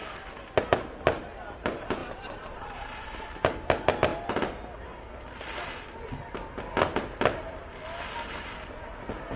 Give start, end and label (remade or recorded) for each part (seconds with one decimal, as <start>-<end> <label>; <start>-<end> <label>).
0.0-2.0 recorded; 2.0-3.3 remade; 3.3-9.4 recorded